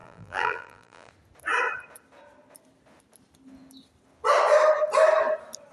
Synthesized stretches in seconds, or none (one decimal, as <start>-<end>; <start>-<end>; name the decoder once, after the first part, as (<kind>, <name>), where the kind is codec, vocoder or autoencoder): 0.0-1.1 (vocoder, BigVGAN v2)